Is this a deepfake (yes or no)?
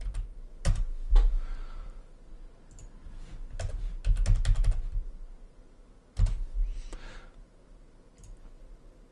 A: no